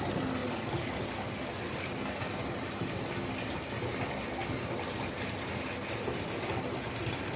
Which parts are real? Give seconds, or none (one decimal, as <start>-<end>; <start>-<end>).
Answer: 0.0-0.4; 3.5-4.4